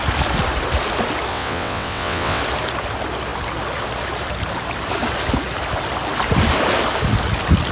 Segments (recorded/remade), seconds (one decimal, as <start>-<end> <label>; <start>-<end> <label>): 0.0-1.3 recorded; 1.3-2.4 remade; 2.4-7.7 recorded